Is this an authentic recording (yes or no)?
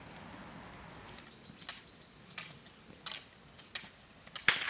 yes